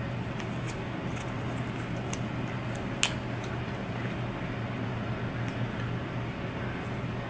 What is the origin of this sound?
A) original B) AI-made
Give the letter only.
A